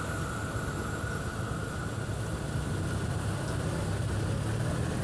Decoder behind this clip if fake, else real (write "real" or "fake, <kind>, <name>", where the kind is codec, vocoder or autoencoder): real